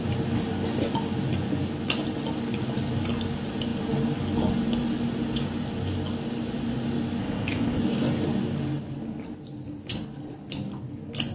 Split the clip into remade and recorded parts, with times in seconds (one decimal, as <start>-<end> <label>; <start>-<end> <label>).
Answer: 0.0-7.2 recorded; 7.2-7.8 remade; 7.8-11.3 recorded